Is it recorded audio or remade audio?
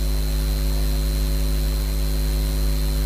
recorded